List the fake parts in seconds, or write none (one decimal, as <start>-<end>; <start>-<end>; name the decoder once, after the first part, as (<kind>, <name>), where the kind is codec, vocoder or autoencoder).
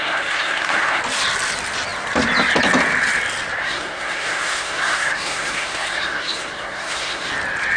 0.0-1.0 (codec, SNAC); 3.6-7.3